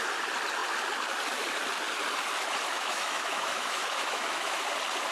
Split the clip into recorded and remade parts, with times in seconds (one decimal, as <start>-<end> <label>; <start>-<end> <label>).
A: 0.0-2.7 recorded; 2.7-4.6 remade; 4.6-5.1 recorded